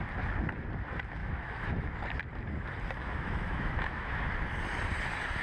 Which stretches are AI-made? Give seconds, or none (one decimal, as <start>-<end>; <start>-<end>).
1.2-1.9; 3.0-4.3